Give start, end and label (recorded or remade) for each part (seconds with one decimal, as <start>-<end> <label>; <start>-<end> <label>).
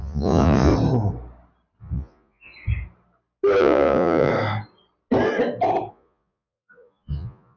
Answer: 0.0-0.7 remade; 0.7-1.8 recorded; 1.8-2.5 remade; 2.5-3.6 recorded; 3.6-4.3 remade; 4.3-5.9 recorded; 5.9-7.6 remade